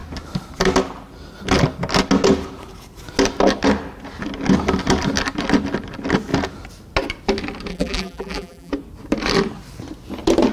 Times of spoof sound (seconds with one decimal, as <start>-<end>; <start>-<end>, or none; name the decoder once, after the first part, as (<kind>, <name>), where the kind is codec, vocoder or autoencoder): 7.7-8.7 (vocoder, BigVGAN v2)